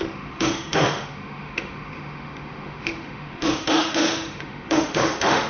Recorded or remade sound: remade